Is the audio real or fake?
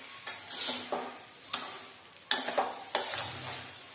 real